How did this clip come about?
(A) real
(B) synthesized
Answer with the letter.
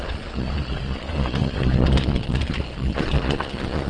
B